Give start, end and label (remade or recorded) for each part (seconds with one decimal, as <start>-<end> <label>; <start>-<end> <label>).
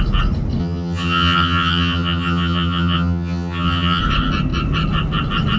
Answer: 0.0-0.6 recorded; 0.6-4.0 remade; 4.0-5.6 recorded